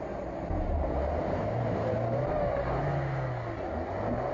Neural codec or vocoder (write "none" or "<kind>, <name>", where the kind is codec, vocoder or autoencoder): none